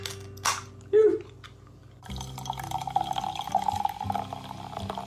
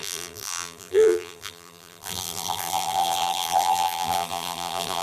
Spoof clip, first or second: second